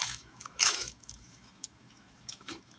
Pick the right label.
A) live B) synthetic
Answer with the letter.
B